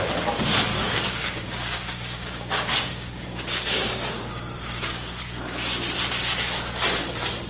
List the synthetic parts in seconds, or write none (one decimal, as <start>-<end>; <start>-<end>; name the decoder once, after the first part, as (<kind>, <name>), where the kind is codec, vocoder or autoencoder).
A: 0.7-5.2 (codec, DAC)